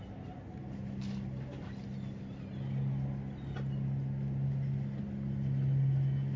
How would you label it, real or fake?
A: real